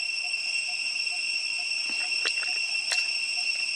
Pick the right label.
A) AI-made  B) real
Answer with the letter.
B